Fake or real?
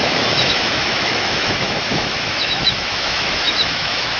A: fake